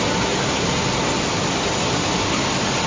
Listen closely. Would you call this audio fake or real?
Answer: real